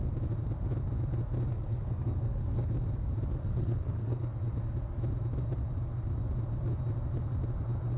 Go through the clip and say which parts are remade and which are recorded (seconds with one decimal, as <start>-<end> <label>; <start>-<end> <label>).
0.0-1.5 recorded; 1.5-2.7 remade; 2.7-3.3 recorded; 3.3-4.2 remade; 4.2-8.0 recorded